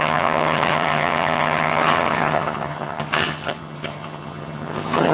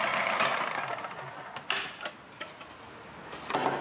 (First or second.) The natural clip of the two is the second